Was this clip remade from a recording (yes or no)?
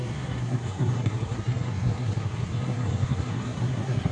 yes